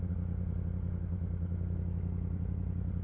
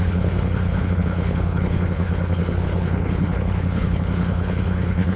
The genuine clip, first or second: first